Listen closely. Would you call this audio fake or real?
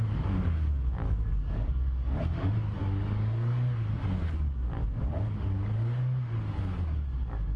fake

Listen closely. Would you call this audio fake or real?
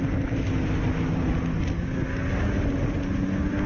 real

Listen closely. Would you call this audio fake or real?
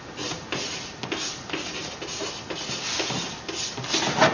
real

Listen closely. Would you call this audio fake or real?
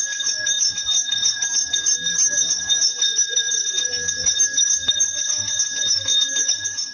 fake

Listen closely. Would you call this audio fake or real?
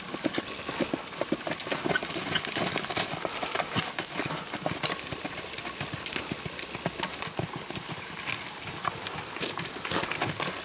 real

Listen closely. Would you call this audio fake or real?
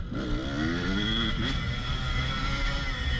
real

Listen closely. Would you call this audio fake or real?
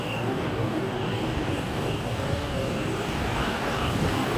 fake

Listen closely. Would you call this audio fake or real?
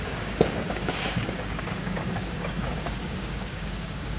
fake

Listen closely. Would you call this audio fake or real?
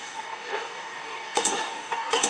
fake